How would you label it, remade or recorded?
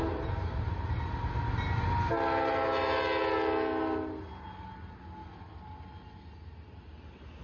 recorded